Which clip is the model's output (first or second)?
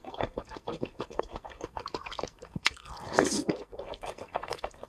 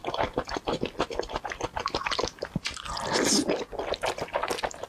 first